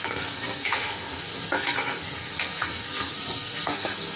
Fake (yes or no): yes